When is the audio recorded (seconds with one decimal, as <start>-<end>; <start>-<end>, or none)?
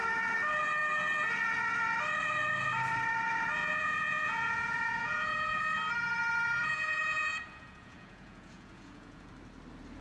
0.0-3.6; 5.6-6.6; 9.3-10.0